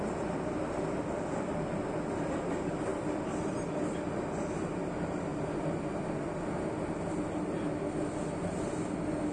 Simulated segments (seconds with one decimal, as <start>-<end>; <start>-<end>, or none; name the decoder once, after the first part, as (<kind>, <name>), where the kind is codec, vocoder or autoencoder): none